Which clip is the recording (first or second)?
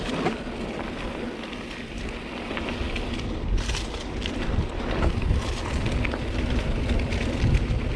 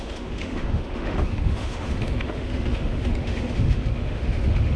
first